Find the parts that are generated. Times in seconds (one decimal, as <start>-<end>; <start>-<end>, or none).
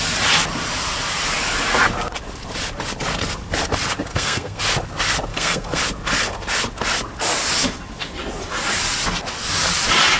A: 4.1-4.6; 5.3-5.8